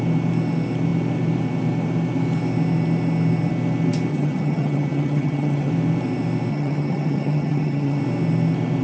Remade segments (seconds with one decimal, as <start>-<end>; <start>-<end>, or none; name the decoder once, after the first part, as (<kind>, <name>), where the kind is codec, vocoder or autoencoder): 4.1-5.7 (vocoder, HiFi-GAN); 6.5-8.0